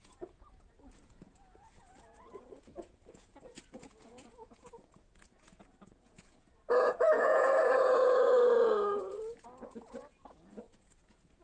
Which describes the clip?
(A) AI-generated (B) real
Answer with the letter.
A